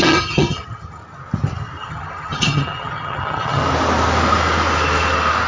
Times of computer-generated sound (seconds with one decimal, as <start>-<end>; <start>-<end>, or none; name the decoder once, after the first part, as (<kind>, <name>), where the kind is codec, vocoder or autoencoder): 0.0-1.0 (vocoder, HiFi-GAN); 1.8-3.6